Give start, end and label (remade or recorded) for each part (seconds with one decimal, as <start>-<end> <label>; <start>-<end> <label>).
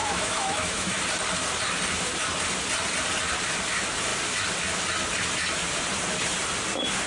0.0-1.0 remade; 1.0-7.1 recorded